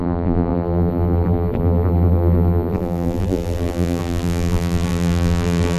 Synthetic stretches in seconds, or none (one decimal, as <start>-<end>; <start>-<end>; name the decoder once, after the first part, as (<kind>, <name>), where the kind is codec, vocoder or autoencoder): 0.0-5.8 (vocoder, BigVGAN v2)

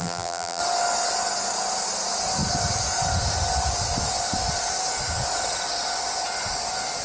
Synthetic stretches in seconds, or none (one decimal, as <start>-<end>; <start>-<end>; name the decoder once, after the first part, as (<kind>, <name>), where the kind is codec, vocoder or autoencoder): 0.0-0.6 (vocoder, BigVGAN v2)

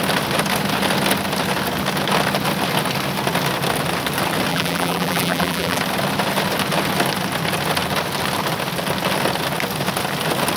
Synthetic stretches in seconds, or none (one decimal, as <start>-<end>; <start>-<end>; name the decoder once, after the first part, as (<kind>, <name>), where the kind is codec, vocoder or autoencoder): 4.5-5.8 (vocoder, BigVGAN v2)

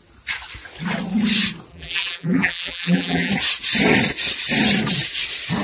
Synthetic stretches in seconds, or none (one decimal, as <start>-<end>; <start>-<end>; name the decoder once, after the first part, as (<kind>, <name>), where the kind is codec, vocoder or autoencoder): 1.7-3.3 (vocoder, BigVGAN v2)

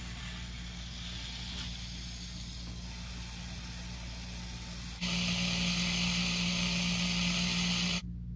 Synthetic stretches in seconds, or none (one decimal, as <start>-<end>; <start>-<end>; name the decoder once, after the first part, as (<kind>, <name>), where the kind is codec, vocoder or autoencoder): none

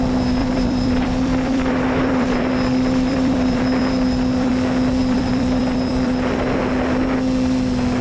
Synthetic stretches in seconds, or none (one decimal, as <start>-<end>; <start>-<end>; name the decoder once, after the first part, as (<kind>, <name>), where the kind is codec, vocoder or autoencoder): 0.4-4.5 (vocoder, BigVGAN v2); 5.0-6.6

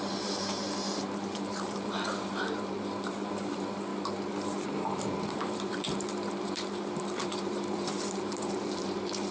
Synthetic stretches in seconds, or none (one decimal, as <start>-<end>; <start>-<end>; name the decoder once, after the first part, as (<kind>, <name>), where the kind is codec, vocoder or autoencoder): 0.0-3.9 (vocoder, BigVGAN v2); 4.8-9.3